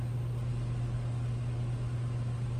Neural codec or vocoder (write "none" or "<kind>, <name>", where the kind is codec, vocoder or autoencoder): none